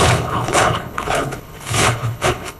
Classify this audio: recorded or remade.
remade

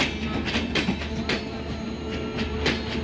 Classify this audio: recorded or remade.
recorded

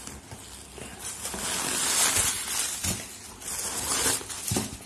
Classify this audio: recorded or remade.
recorded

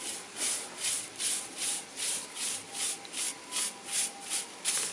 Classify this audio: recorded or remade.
recorded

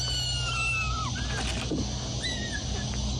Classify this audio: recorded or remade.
recorded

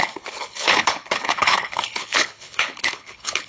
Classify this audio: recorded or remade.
remade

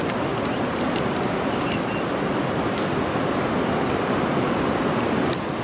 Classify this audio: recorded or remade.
recorded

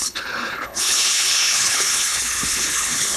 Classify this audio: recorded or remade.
remade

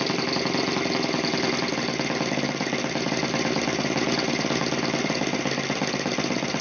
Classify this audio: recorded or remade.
recorded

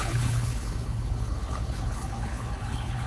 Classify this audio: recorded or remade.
remade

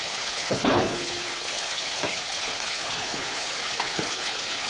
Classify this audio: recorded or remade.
remade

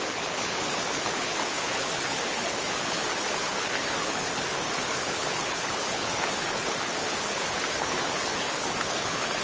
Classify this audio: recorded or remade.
remade